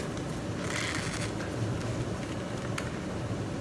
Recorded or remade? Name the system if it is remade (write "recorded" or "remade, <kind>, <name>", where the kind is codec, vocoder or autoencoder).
recorded